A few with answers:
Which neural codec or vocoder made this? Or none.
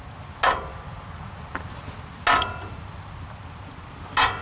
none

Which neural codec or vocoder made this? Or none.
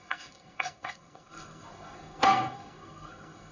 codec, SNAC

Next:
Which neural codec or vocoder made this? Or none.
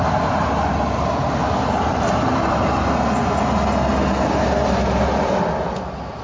none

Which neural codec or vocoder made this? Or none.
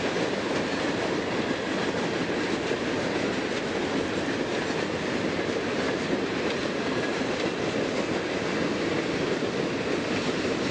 none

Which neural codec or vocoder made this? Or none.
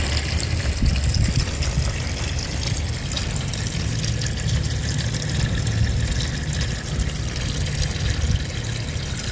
none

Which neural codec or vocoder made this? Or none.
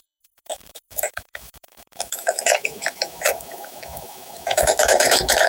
autoencoder, DAC-VAE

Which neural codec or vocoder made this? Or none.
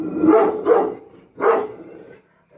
vocoder, BigVGAN v2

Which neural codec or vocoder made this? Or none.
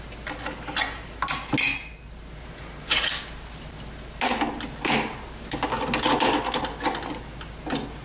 none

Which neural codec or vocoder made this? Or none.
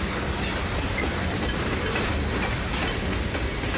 none